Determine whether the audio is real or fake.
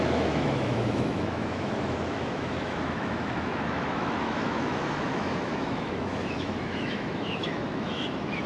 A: fake